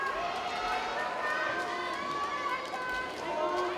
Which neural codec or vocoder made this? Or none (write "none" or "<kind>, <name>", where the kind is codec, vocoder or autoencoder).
none